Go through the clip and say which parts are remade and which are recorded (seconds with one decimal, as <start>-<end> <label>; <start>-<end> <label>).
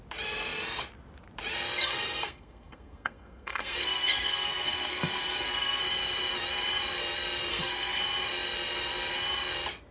0.0-1.8 recorded; 1.8-5.8 remade; 5.8-7.5 recorded; 7.5-8.0 remade; 8.0-9.9 recorded